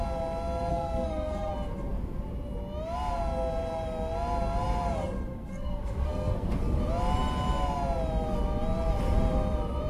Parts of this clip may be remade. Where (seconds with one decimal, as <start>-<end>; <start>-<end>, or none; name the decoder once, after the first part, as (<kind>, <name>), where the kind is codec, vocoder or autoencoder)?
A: 0.7-1.5 (codec, SNAC); 5.3-6.8